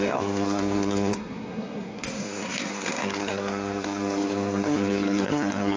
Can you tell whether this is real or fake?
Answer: fake